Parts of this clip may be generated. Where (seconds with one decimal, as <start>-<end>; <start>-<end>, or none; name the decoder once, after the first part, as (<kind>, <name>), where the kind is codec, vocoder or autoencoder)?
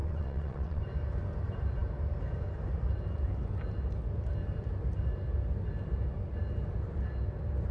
0.0-0.8 (vocoder, WaveNeXt)